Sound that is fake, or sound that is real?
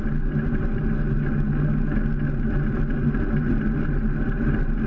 real